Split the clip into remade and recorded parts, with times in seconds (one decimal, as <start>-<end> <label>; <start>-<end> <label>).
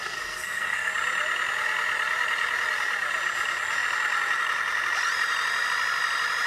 0.0-0.9 remade; 0.9-6.5 recorded